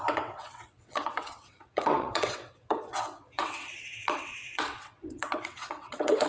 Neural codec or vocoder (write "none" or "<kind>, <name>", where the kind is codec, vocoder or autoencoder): vocoder, WaveNeXt